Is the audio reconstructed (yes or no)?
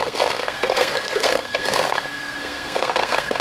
yes